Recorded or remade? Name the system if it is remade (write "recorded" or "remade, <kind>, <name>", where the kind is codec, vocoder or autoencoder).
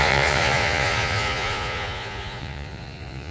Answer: remade, vocoder, Vocos